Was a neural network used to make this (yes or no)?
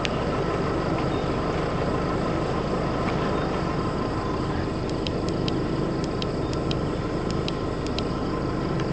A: no